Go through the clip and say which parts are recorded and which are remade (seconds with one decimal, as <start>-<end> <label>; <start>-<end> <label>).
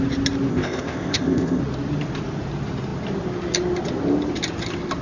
0.0-0.5 recorded; 0.5-1.6 remade; 1.6-5.0 recorded